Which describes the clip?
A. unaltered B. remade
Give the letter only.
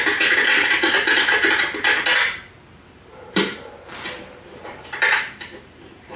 B